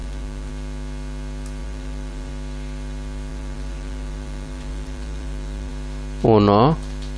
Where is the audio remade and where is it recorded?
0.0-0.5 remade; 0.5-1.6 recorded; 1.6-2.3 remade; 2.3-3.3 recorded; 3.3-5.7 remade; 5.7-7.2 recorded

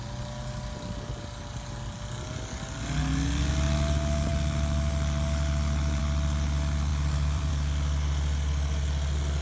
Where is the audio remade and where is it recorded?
0.0-6.9 recorded; 6.9-7.5 remade; 7.5-9.4 recorded

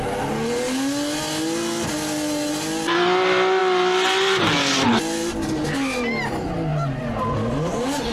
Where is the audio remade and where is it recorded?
0.0-8.1 recorded

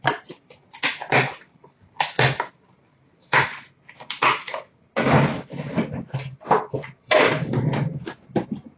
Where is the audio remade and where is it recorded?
0.0-0.4 remade; 0.4-1.4 recorded; 1.4-3.5 remade; 3.5-6.1 recorded; 6.1-8.8 remade

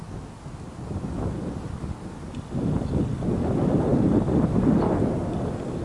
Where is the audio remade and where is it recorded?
0.0-5.8 recorded